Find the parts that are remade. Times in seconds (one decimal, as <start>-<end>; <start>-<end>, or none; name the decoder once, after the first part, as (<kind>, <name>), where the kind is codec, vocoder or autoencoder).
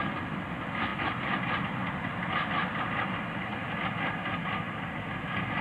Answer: none